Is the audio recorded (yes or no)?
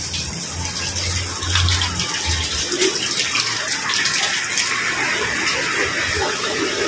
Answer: yes